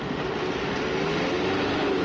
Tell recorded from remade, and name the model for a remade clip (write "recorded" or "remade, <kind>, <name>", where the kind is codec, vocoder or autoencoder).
recorded